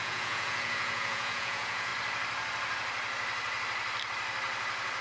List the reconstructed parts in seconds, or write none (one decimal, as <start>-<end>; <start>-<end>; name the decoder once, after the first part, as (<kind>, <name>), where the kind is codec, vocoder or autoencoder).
0.0-1.9 (vocoder, Vocos)